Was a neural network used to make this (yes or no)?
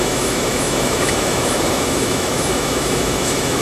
yes